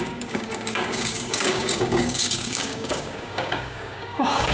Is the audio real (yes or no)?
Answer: no